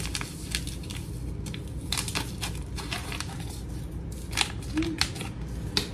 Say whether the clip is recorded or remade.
recorded